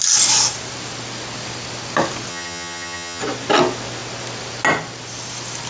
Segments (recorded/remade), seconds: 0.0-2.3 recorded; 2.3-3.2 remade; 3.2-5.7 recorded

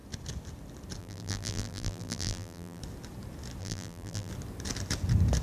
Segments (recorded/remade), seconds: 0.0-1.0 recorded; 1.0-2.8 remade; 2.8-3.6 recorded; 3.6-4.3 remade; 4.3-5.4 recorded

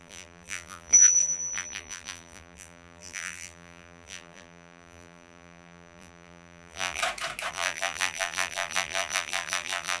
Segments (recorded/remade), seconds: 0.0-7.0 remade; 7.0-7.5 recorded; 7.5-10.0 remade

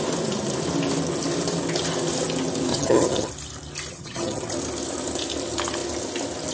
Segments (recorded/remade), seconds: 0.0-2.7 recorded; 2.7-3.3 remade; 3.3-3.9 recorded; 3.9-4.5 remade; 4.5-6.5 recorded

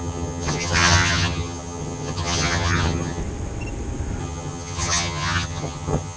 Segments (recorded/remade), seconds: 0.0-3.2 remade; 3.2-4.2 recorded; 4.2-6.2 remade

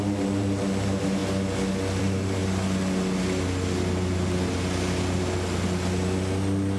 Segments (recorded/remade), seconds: 0.0-1.2 remade; 1.2-2.0 recorded; 2.0-2.4 remade; 2.4-6.8 recorded

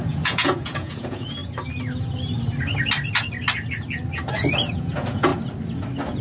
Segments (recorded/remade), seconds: 0.0-1.4 remade; 1.4-4.8 recorded; 4.8-5.3 remade; 5.3-6.2 recorded

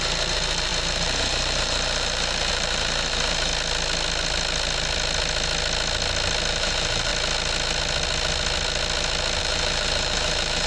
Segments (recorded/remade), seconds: 0.0-3.5 remade; 3.5-6.5 recorded; 6.5-7.1 remade; 7.1-9.4 recorded; 9.4-10.7 remade